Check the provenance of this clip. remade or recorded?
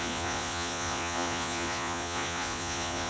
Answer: remade